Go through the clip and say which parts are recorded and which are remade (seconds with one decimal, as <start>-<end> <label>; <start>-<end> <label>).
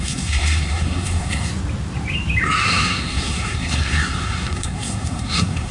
0.0-1.5 remade; 1.5-2.6 recorded; 2.6-5.7 remade